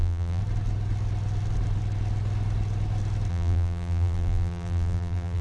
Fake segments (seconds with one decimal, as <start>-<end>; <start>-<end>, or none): 0.0-0.4; 3.3-5.4